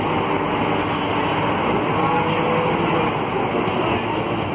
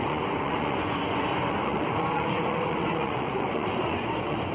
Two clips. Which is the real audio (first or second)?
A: first